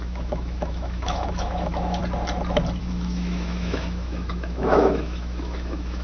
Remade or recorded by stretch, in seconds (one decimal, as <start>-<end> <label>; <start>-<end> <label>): 0.0-2.0 remade; 2.0-2.8 recorded; 2.8-6.0 remade